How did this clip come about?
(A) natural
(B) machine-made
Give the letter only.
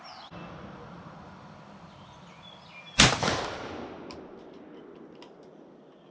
A